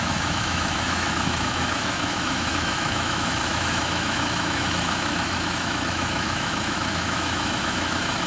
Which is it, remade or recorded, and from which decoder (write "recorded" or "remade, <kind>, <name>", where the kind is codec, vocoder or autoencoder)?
remade, autoencoder, DAC-VAE